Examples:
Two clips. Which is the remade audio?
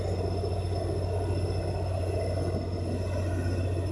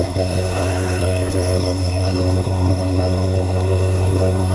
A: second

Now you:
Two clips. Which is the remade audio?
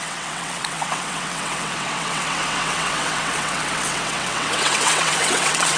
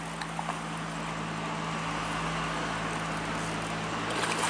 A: first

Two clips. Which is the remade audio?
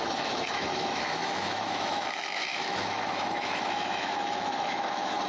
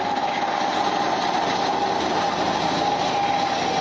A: first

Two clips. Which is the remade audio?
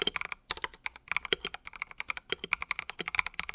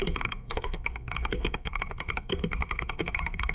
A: second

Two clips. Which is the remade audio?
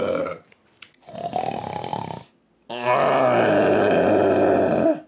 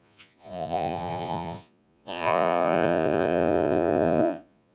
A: second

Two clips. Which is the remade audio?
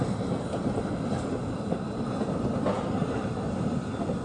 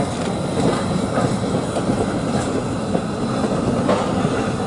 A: first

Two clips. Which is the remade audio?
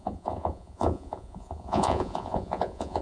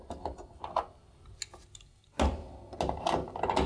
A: first